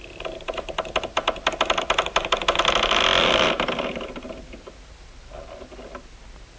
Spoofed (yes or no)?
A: no